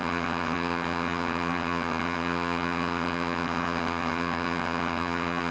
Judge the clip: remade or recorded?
remade